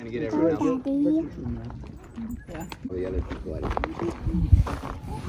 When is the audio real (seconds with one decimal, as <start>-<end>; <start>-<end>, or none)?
0.0-5.3